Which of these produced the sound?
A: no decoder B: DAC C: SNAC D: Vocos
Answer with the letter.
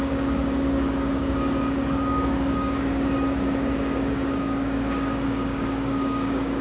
B